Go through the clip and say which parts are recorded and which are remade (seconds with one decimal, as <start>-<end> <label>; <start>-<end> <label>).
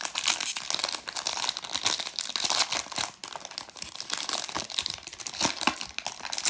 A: 0.0-6.5 recorded